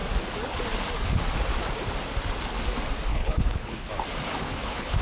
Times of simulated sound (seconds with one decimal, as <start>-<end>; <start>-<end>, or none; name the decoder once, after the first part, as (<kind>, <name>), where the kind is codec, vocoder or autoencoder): 3.1-3.9 (codec, HILCodec); 4.4-5.0